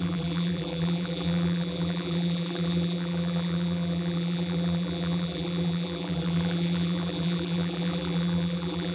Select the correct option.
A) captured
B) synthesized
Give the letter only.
B